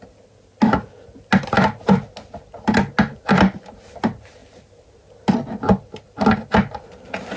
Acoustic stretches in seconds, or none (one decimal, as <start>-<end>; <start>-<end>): 0.0-7.4